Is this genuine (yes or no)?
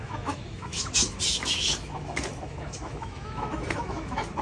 no